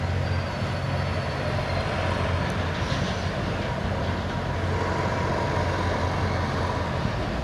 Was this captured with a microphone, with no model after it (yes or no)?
yes